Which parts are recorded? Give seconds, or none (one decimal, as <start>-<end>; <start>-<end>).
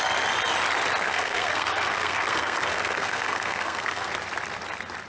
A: 0.0-1.0; 4.1-5.1